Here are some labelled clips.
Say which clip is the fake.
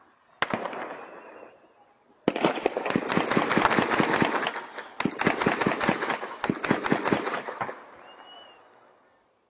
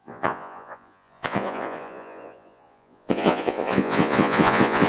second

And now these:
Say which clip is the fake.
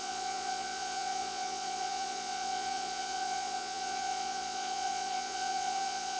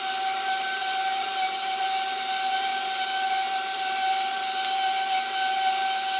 first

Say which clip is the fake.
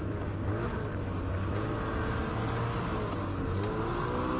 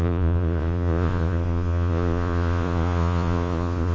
second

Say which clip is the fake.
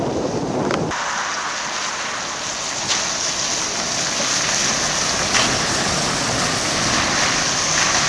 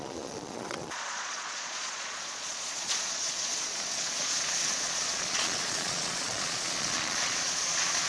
second